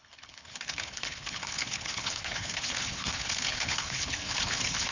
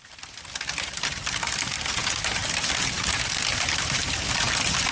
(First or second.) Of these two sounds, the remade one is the first